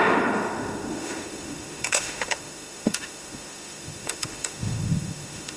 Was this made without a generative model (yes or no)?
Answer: no